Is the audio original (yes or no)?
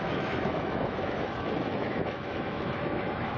no